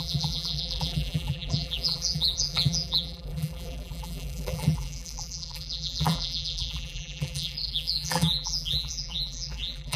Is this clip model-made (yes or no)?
yes